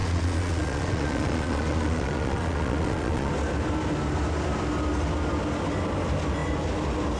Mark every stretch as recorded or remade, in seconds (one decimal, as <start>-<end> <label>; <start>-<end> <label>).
0.0-3.3 remade; 3.3-7.2 recorded